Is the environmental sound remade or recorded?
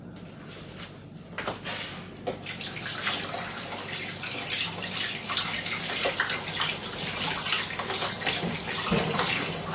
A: recorded